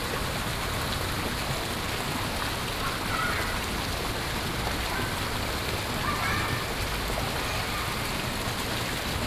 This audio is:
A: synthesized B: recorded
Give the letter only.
B